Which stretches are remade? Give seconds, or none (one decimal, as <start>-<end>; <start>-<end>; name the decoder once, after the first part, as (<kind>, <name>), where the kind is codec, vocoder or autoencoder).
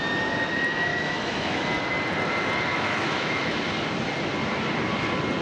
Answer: 0.9-1.6 (autoencoder, DAC-VAE); 2.7-3.6